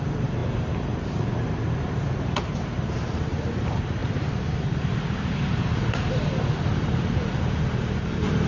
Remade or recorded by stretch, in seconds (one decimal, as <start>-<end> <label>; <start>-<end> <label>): 0.0-4.0 remade; 4.0-4.6 recorded; 4.6-8.5 remade